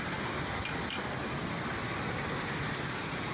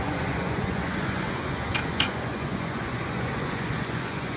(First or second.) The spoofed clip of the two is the second